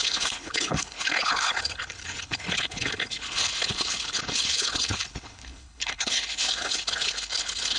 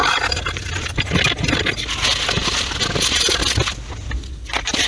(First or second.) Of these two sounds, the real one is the second